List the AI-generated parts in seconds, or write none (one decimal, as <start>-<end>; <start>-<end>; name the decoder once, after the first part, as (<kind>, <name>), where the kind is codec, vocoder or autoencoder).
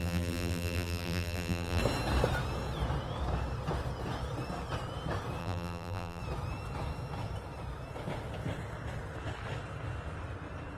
0.0-1.8 (vocoder, BigVGAN v2); 5.4-6.2